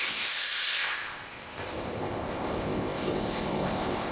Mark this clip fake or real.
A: fake